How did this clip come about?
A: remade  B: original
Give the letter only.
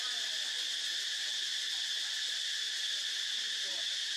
B